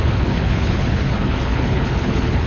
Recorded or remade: remade